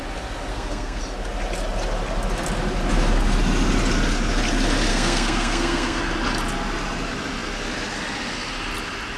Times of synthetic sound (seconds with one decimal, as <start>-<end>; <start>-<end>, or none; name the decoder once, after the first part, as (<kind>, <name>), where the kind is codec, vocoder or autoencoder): 0.5-1.0 (codec, SNAC); 4.9-6.0